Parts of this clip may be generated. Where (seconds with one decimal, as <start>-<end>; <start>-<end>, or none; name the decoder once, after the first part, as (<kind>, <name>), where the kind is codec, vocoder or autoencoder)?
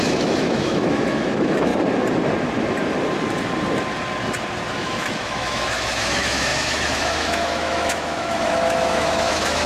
0.0-1.7 (autoencoder, DAC-VAE); 4.7-9.7